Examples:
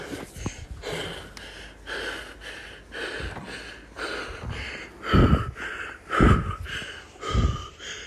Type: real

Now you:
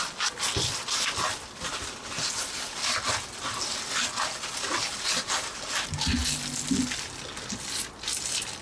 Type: real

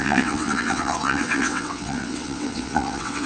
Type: fake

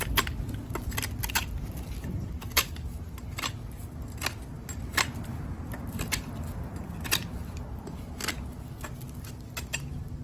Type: real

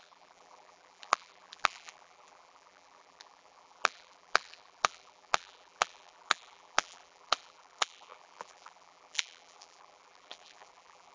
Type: fake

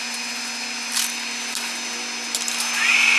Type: real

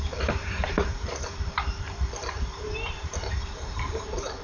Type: fake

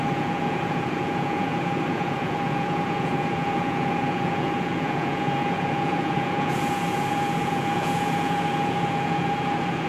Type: fake